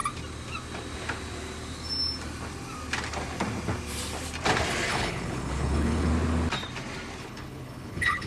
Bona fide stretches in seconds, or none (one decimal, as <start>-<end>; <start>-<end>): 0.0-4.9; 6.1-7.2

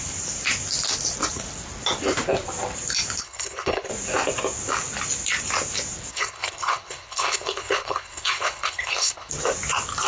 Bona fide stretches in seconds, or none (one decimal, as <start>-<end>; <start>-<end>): 0.0-3.2; 3.9-6.1; 9.3-10.1

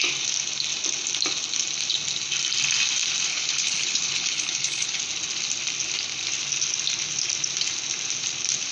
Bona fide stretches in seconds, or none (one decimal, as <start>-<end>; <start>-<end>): 0.0-3.3; 5.0-8.7

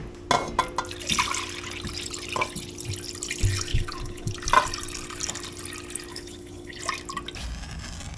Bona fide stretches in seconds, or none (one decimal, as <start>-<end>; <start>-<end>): 0.0-3.7; 4.3-6.1; 6.8-8.2

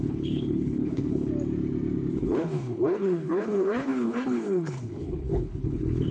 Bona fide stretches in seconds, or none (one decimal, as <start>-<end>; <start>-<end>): 1.3-2.1

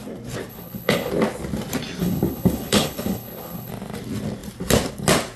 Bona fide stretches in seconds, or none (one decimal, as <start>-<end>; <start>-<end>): 0.0-0.5; 1.1-2.0; 3.7-5.4

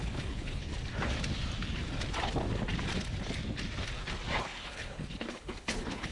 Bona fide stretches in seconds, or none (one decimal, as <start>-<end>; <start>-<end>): 0.7-4.4